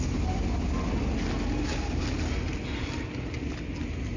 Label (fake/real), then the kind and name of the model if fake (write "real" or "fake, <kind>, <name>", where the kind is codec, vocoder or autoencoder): real